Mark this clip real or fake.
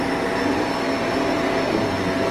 real